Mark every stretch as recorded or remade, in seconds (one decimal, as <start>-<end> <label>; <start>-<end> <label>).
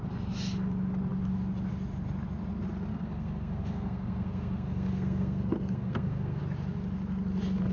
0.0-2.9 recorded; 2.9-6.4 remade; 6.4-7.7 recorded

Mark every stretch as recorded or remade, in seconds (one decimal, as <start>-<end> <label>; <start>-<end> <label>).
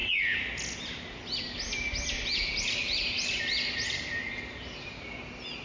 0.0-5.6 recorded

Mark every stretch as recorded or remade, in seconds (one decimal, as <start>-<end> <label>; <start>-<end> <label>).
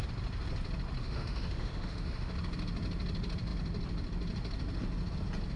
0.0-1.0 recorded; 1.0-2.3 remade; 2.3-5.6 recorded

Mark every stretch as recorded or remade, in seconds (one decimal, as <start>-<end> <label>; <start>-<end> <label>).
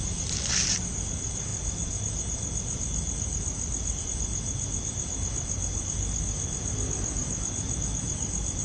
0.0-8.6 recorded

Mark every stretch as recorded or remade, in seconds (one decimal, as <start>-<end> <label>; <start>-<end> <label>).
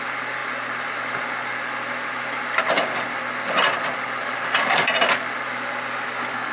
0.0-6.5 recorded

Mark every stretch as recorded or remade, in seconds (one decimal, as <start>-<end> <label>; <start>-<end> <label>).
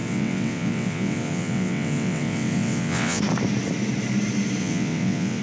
0.0-3.2 remade; 3.2-4.6 recorded; 4.6-5.4 remade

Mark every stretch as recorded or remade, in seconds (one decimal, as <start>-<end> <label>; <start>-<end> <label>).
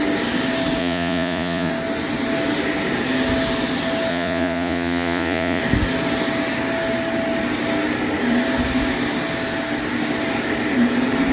0.0-0.8 recorded; 0.8-1.7 remade; 1.7-4.1 recorded; 4.1-5.6 remade; 5.6-11.3 recorded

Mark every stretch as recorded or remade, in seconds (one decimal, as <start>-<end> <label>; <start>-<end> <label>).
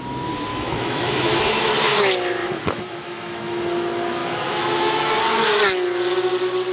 0.0-0.5 recorded; 0.5-1.4 remade; 1.4-2.4 recorded; 2.4-3.6 remade; 3.6-4.2 recorded; 4.2-5.1 remade; 5.1-6.7 recorded